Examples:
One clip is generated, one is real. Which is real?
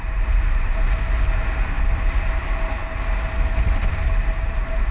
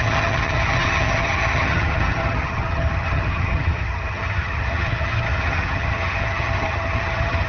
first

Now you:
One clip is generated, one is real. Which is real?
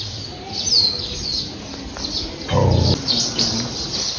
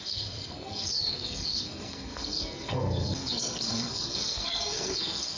first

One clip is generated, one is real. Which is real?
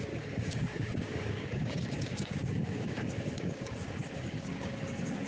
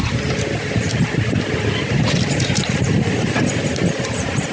second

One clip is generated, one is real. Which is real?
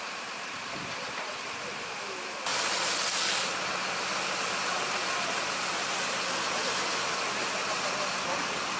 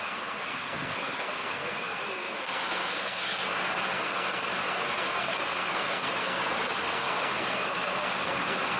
first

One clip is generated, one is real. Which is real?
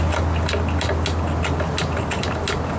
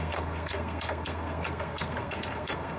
first